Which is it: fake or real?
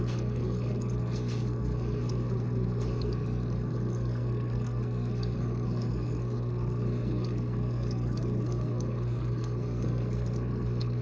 fake